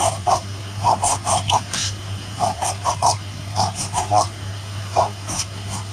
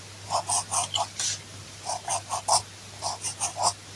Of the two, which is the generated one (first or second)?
first